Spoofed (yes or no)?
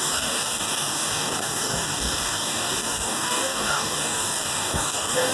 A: yes